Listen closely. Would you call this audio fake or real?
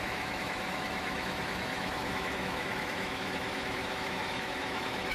fake